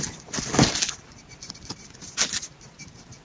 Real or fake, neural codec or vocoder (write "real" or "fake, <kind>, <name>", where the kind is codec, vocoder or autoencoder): real